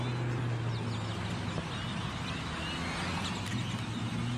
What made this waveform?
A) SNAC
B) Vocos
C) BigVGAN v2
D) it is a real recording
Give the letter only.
D